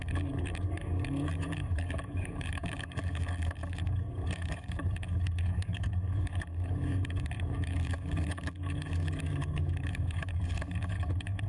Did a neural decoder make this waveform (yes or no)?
yes